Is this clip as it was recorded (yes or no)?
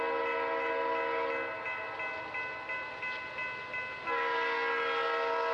yes